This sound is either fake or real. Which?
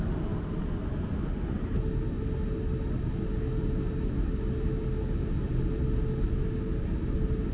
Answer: real